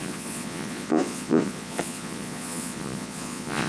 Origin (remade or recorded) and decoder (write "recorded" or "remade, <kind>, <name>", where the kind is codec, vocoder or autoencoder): remade, vocoder, Vocos